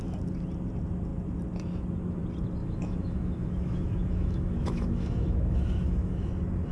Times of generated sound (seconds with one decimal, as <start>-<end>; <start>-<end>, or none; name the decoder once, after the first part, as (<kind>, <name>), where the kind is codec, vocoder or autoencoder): 2.6-6.3 (autoencoder, DAC-VAE)